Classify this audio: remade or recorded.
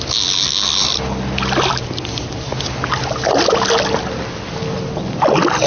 recorded